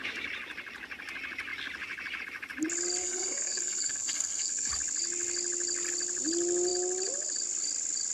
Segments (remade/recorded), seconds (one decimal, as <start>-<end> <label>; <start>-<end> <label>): 0.0-3.0 recorded; 3.0-4.7 remade; 4.7-8.1 recorded